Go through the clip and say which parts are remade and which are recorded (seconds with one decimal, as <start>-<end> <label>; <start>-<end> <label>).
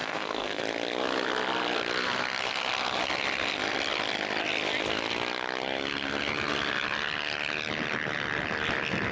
0.0-0.6 remade; 0.6-9.1 recorded